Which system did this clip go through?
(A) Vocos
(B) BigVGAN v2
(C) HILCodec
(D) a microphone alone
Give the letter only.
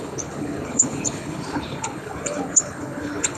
C